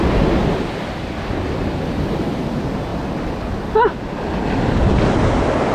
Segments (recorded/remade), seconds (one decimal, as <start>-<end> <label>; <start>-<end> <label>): 0.0-5.7 recorded